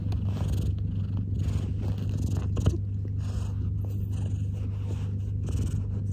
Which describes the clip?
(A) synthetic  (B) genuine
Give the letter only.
B